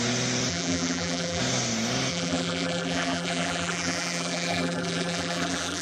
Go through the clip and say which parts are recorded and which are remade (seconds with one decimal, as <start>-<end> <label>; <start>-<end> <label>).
0.0-0.5 recorded; 0.5-1.4 remade; 1.4-2.1 recorded; 2.1-5.8 remade